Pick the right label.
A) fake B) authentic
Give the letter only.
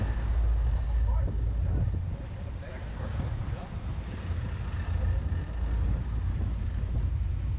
B